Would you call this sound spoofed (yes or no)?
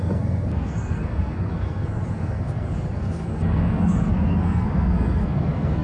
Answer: yes